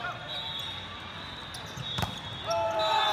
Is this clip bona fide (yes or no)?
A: yes